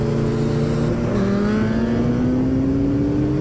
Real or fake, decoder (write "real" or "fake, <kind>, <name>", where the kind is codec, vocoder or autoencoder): real